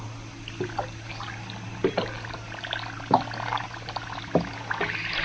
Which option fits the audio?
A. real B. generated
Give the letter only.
A